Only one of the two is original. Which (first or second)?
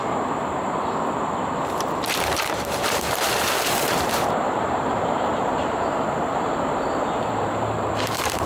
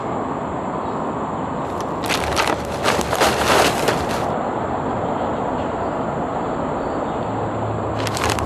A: second